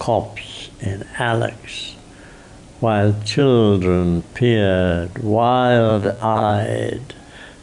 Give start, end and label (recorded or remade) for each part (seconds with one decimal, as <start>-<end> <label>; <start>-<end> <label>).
0.0-5.9 recorded; 5.9-6.5 remade; 6.5-7.6 recorded